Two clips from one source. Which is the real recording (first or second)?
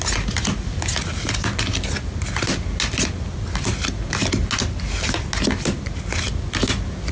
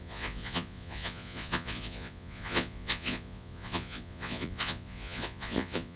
first